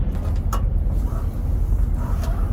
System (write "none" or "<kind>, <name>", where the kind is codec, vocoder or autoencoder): none